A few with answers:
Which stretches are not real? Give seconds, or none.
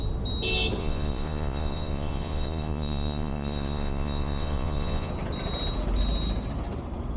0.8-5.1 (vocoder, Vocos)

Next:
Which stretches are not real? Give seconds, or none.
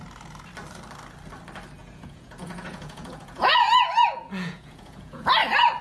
1.8-5.3 (vocoder, Vocos)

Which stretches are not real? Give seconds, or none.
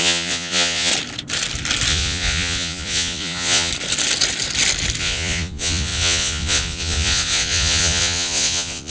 0.0-0.9 (vocoder, Vocos); 1.9-3.7; 5.0-8.9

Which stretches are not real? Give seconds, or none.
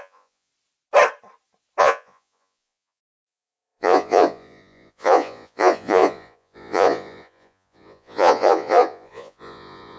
0.0-0.5 (vocoder, Vocos); 1.8-10.0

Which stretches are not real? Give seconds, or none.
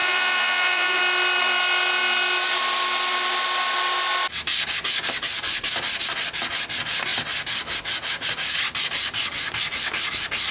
0.0-1.0 (vocoder, Vocos)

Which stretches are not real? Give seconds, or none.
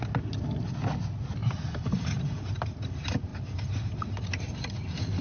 none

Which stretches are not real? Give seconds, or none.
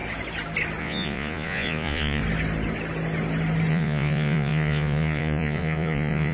0.8-2.2 (vocoder, Vocos); 3.7-6.3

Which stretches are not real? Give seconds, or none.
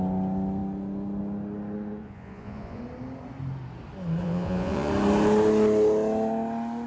2.0-2.8 (vocoder, Vocos); 4.2-4.9